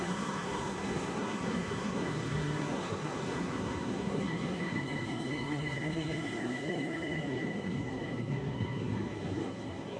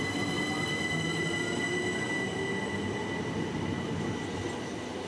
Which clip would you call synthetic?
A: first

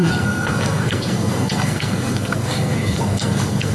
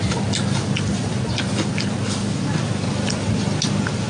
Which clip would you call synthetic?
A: first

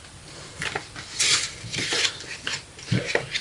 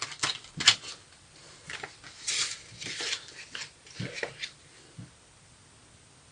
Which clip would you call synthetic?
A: first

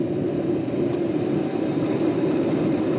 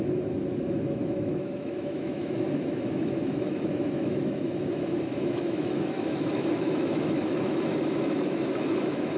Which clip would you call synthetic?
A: second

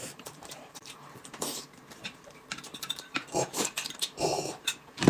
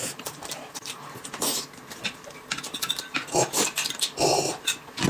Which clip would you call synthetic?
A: first